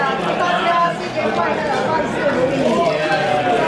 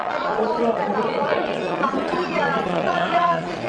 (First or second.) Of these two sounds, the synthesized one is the second